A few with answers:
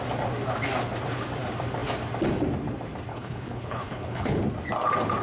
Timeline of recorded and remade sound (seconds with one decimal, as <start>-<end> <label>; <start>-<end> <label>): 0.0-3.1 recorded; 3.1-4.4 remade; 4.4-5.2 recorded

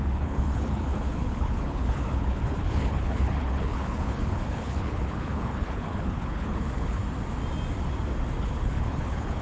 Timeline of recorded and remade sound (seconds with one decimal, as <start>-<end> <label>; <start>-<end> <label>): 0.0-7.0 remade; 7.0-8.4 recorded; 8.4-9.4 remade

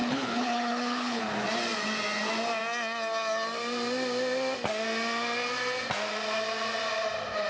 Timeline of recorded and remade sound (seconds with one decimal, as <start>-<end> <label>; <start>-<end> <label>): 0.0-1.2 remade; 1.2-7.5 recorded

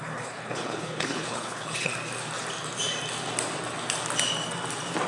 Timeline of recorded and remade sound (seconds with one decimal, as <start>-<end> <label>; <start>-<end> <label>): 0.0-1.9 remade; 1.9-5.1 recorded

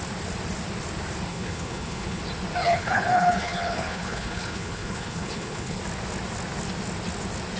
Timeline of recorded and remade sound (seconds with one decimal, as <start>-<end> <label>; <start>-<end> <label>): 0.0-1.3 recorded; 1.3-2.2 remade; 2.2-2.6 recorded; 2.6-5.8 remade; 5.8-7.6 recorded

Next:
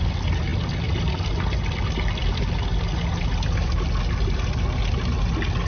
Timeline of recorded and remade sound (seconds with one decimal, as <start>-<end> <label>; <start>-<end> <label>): 0.0-5.7 recorded

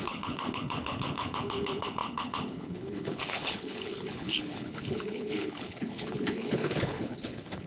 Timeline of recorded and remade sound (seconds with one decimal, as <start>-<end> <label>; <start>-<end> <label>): 0.0-7.7 remade

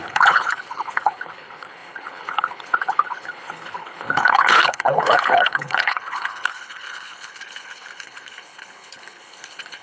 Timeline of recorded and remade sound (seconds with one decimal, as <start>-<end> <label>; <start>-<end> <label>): 0.0-9.8 remade